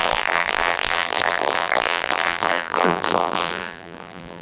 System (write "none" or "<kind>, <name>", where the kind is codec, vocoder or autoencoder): vocoder, BigVGAN v2